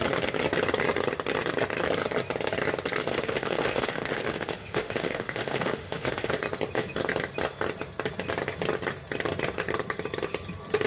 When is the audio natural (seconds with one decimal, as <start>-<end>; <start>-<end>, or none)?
0.0-3.1; 6.3-10.9